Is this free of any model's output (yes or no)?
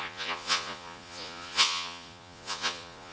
no